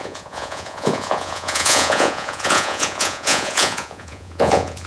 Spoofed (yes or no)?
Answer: yes